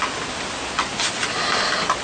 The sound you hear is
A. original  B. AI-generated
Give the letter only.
A